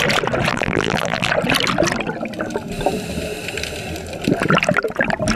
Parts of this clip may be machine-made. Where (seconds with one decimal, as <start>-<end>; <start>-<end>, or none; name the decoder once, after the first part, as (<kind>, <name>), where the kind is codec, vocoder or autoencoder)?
0.5-1.3 (vocoder, BigVGAN v2)